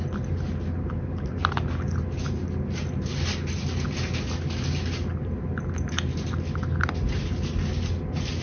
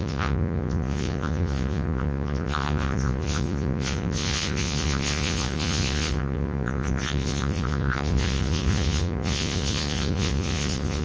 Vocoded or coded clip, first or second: second